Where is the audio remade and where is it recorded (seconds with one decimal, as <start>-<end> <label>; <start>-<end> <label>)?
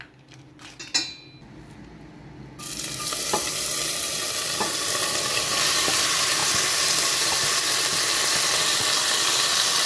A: 0.0-9.9 recorded